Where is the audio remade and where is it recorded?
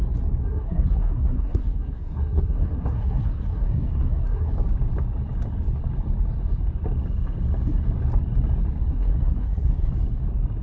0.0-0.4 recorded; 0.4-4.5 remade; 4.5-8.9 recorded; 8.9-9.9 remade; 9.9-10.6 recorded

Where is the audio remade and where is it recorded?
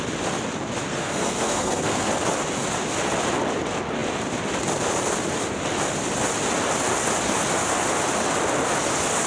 0.0-0.9 recorded; 0.9-2.1 remade; 2.1-9.3 recorded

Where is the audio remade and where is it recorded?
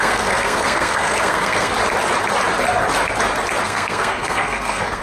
0.0-1.7 remade; 1.7-3.6 recorded; 3.6-5.0 remade